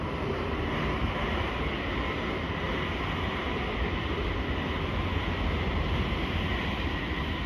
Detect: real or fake real